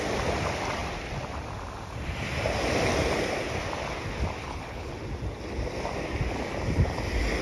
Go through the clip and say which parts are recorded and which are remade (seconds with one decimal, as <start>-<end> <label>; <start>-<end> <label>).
0.0-4.4 recorded; 4.4-4.9 remade; 4.9-7.4 recorded